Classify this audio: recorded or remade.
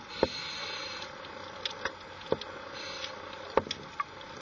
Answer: recorded